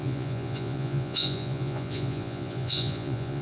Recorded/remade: remade